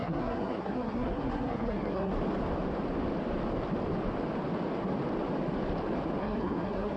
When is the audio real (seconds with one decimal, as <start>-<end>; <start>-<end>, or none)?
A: 2.1-6.2